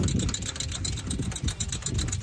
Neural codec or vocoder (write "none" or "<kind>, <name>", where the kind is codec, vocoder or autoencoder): none